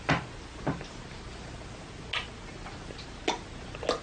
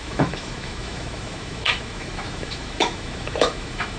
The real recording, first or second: first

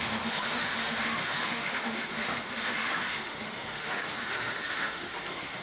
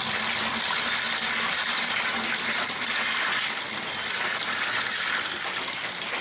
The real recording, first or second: second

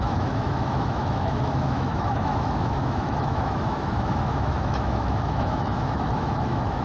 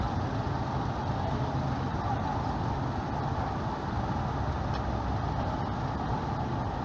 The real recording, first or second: second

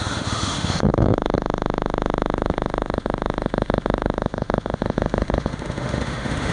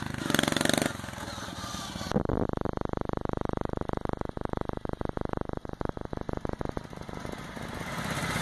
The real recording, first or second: second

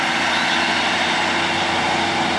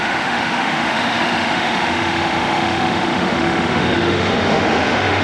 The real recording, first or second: first